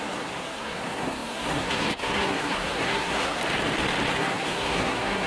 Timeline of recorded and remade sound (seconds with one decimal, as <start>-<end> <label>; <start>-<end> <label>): 0.0-3.4 remade; 3.4-4.1 recorded; 4.1-5.3 remade